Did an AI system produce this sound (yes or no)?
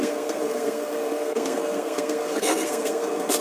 yes